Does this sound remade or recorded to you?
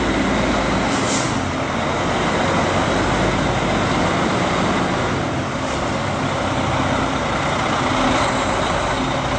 recorded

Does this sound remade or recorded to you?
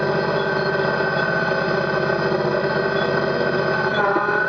recorded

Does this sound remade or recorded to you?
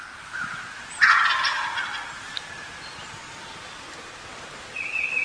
recorded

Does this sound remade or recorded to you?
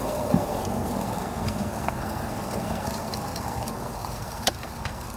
remade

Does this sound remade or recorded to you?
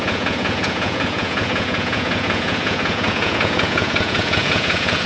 remade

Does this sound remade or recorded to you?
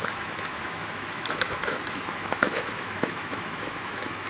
remade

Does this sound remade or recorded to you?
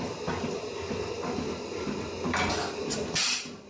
recorded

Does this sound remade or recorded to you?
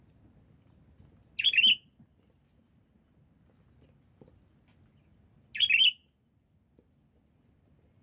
recorded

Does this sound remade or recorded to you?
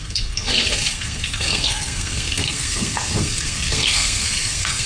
remade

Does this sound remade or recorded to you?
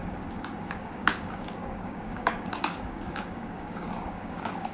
remade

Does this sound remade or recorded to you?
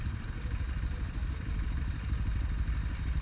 remade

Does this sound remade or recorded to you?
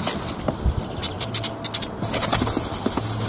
recorded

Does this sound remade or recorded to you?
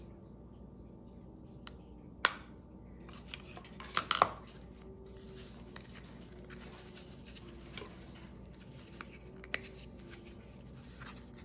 recorded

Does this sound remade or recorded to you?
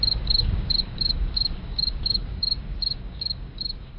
remade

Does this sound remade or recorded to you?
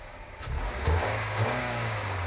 remade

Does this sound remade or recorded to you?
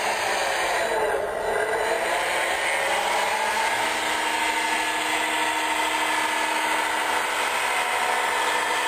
recorded